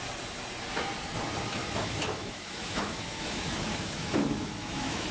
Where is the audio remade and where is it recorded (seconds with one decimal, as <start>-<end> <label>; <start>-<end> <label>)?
0.0-1.6 recorded; 1.6-5.1 remade